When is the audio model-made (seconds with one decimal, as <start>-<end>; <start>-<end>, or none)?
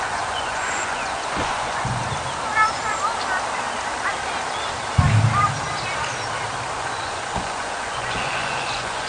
0.0-2.0; 6.7-9.1